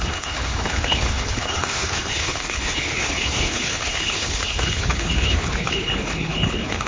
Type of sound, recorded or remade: remade